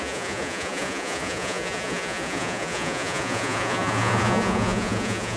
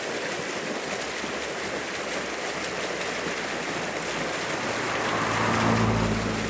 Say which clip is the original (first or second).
second